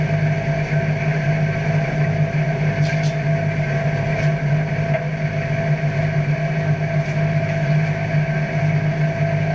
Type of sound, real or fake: real